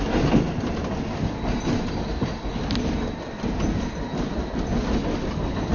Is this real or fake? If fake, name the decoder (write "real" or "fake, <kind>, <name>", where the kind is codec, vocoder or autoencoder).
real